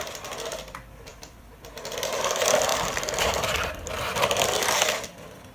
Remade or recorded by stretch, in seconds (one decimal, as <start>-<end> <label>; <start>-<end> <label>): 0.0-5.5 remade